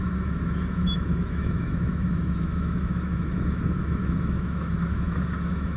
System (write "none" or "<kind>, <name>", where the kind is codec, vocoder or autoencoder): autoencoder, DAC-VAE